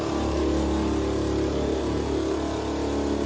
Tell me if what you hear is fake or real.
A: real